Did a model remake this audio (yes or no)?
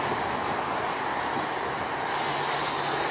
no